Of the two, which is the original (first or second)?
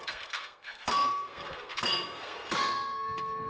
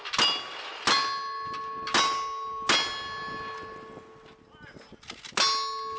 second